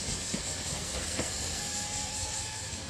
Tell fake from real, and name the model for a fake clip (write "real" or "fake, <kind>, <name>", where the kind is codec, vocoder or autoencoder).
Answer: fake, codec, SNAC